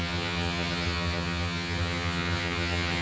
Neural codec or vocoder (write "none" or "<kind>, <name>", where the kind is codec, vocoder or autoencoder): vocoder, HiFi-GAN